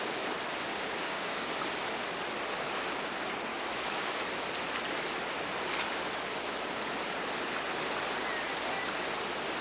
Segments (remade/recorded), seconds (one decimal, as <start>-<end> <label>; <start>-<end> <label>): 0.0-0.7 recorded; 0.7-1.5 remade; 1.5-3.5 recorded; 3.5-4.2 remade; 4.2-9.6 recorded